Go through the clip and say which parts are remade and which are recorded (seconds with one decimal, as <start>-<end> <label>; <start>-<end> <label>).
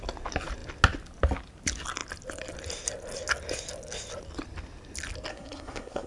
0.0-5.3 recorded; 5.3-6.1 remade